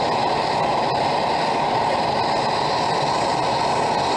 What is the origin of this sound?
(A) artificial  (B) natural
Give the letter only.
B